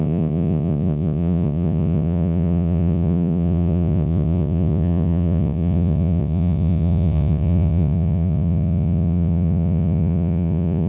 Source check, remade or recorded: remade